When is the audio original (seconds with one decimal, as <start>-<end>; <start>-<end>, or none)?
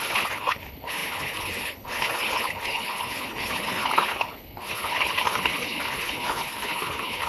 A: none